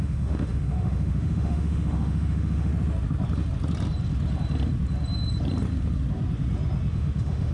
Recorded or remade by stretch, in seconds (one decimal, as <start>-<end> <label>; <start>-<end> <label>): 0.0-2.7 remade; 2.7-6.9 recorded; 6.9-7.5 remade